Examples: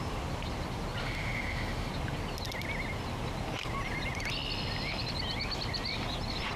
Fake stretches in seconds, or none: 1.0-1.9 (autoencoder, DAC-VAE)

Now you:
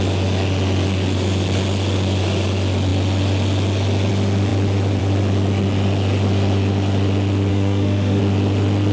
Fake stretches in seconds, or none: 7.5-8.2 (autoencoder, DAC-VAE)

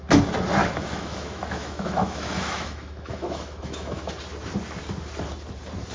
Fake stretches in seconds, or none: 0.6-4.1 (autoencoder, DAC-VAE)

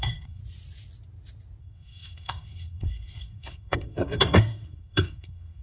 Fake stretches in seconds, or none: 0.0-0.4 (codec, SNAC); 1.6-5.6

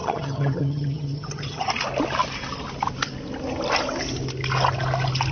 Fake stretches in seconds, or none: 0.0-1.7 (vocoder, HiFi-GAN)

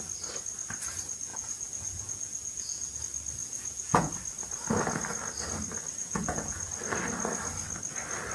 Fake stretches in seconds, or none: 1.3-3.0 (vocoder, Vocos); 3.4-4.1; 6.0-6.7

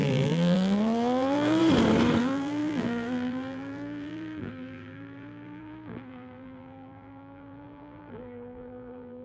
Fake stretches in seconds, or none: 0.0-1.6 (vocoder, BigVGAN v2); 2.2-9.2

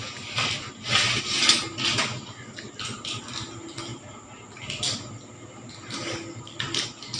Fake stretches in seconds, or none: none